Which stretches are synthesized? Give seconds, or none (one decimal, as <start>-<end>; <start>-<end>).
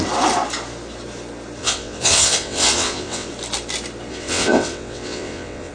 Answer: 1.6-3.3; 4.1-5.7